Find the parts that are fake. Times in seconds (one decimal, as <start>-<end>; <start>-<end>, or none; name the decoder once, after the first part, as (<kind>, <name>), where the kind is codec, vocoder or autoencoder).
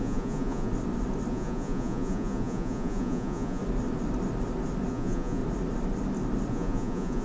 0.0-0.7 (vocoder, Vocos); 1.3-3.6; 4.9-5.4; 6.5-7.2